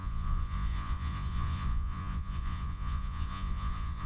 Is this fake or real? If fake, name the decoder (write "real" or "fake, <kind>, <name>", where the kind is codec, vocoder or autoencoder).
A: fake, vocoder, Vocos